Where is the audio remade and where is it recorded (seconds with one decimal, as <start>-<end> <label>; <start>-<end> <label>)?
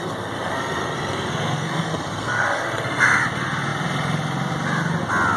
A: 0.0-3.2 remade; 3.2-5.4 recorded